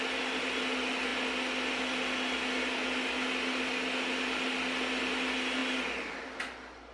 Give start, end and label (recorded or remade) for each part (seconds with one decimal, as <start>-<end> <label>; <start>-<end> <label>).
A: 0.0-6.9 recorded